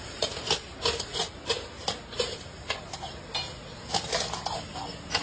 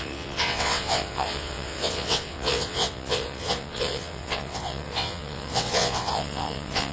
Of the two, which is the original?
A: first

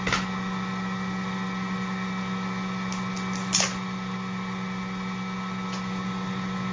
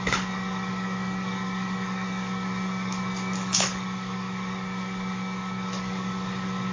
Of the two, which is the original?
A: first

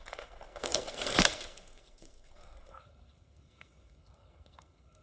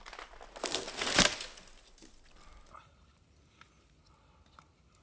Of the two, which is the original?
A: second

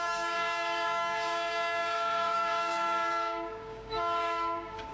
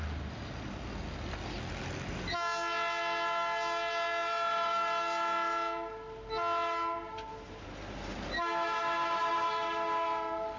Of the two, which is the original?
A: second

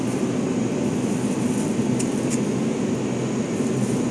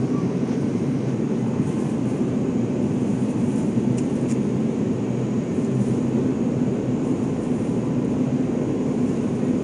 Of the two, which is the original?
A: first